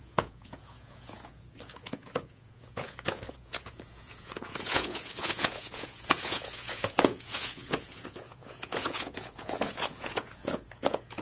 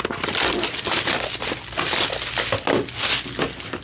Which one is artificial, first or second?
first